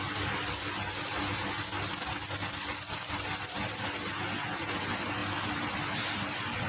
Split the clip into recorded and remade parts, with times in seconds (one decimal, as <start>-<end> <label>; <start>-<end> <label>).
0.0-1.7 recorded; 1.7-4.1 remade; 4.1-5.2 recorded; 5.2-6.7 remade